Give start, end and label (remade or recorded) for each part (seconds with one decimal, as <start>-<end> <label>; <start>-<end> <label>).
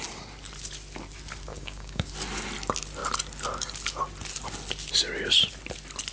0.0-1.5 recorded; 1.5-2.1 remade; 2.1-6.1 recorded